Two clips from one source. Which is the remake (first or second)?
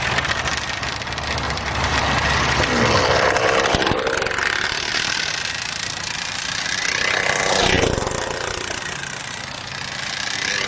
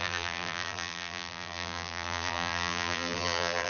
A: second